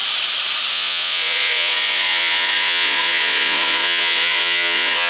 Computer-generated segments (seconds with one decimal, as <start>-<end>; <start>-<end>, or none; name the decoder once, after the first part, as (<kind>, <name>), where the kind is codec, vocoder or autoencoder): 0.7-5.1 (vocoder, Vocos)